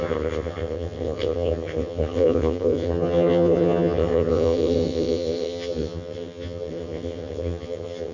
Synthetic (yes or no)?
yes